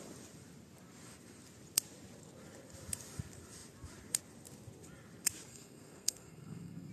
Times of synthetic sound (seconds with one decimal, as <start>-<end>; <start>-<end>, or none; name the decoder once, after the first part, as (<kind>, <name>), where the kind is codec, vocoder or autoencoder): 5.5-6.9 (codec, SNAC)

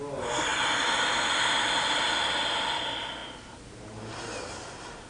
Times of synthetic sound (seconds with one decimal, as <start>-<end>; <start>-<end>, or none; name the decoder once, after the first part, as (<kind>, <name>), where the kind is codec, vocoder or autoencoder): none

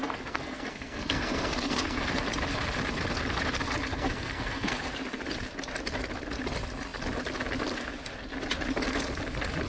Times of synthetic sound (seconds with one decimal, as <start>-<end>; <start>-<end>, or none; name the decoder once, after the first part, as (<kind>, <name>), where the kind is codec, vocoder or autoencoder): 0.0-2.2 (codec, SNAC); 3.9-4.9

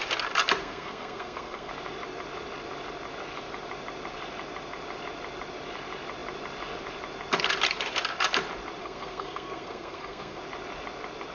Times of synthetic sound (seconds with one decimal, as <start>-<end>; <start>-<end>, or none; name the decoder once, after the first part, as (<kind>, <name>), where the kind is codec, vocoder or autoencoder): 0.6-1.7 (codec, SNAC); 8.8-10.4

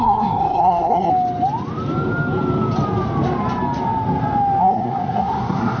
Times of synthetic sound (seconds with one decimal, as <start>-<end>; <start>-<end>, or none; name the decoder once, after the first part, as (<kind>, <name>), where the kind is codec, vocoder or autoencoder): 0.0-1.1 (codec, SNAC); 4.6-5.8

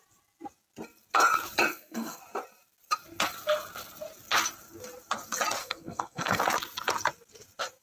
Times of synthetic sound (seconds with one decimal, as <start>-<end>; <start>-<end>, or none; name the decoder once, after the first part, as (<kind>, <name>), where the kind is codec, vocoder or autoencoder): 1.7-2.2 (codec, SNAC); 5.6-6.4

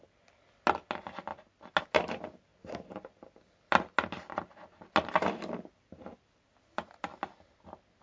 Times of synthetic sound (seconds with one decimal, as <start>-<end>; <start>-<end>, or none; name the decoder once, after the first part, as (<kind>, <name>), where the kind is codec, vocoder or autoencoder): none

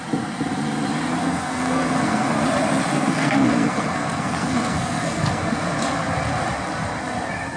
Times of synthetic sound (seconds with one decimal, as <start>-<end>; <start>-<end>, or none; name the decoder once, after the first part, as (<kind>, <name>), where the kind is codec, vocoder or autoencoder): 1.2-2.4 (codec, SNAC); 2.9-5.5